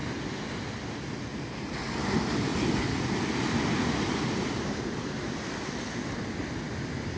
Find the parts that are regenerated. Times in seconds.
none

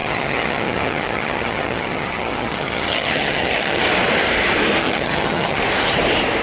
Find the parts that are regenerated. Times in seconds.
0.0-3.8 (vocoder, HiFi-GAN); 4.8-5.6

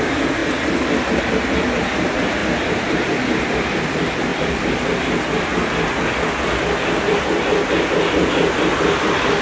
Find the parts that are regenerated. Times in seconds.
none

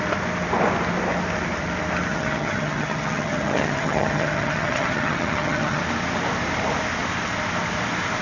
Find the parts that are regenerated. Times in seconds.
2.1-5.8 (vocoder, HiFi-GAN)